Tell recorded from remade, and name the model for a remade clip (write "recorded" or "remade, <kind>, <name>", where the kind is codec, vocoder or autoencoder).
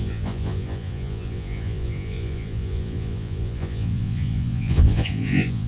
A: remade, vocoder, Vocos